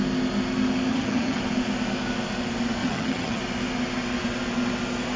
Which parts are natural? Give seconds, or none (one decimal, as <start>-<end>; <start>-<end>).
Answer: 0.0-0.9; 1.4-2.8; 3.4-5.2